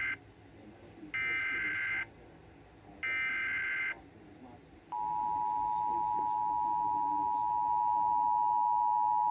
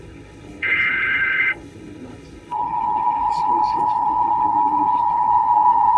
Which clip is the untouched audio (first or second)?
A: first